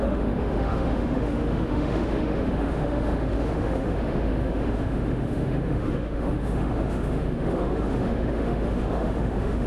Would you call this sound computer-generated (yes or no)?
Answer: yes